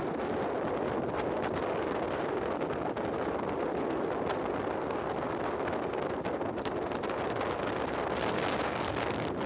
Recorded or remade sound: recorded